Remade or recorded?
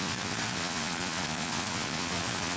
remade